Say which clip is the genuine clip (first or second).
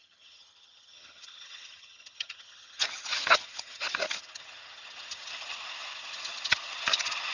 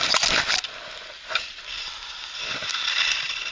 second